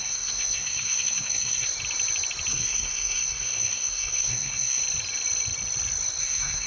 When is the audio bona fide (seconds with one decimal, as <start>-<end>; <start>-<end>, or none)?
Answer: 1.7-2.5; 4.8-6.2